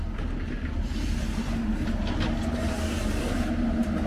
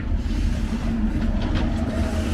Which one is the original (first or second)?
first